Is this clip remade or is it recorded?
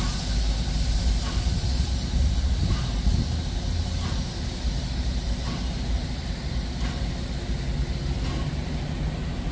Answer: recorded